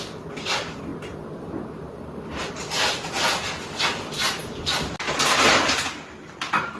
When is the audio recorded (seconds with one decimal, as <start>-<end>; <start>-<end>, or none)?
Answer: 0.0-6.8